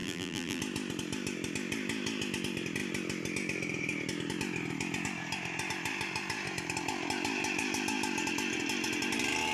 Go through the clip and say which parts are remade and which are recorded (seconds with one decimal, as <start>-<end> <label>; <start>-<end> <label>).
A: 0.0-0.6 remade; 0.6-9.5 recorded